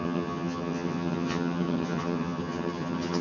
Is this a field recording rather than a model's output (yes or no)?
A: no